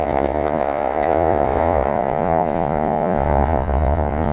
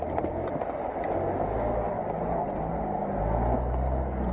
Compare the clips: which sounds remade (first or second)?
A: first